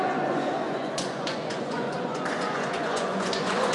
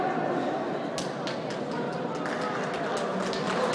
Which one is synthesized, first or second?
first